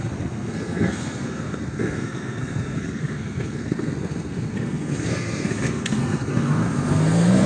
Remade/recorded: remade